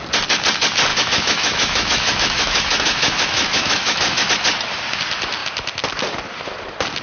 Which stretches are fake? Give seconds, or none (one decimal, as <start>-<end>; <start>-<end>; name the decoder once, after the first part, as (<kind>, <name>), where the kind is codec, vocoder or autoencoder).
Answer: 0.9-4.3 (autoencoder, DAC-VAE)